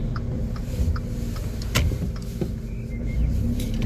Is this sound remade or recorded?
recorded